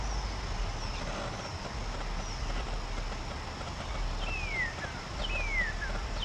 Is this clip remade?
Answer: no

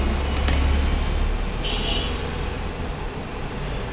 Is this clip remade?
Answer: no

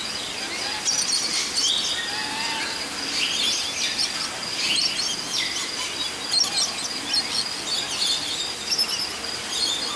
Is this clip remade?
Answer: no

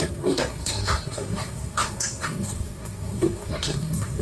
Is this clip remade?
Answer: yes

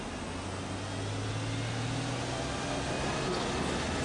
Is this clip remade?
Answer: no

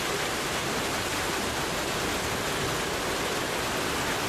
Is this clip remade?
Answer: no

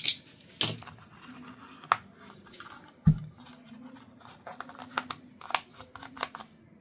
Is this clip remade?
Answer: no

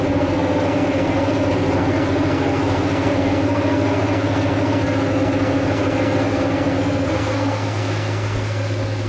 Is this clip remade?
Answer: yes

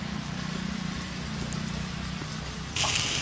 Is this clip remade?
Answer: no